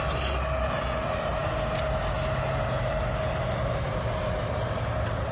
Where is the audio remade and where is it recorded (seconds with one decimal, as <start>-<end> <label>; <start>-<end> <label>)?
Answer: 0.0-5.3 recorded